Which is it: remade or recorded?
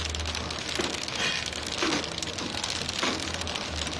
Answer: recorded